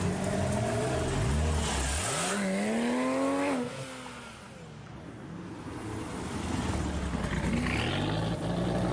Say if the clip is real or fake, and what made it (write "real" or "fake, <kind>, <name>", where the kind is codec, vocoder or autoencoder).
real